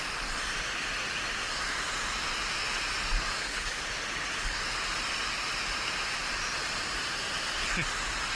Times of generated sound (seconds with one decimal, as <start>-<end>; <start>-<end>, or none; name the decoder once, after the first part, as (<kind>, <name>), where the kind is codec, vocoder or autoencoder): 3.4-4.6 (codec, HILCodec)